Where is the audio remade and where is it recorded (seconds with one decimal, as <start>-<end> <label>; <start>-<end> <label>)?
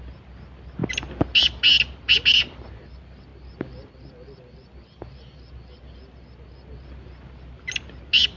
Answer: 0.0-8.4 recorded